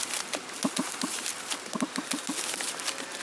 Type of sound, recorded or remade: recorded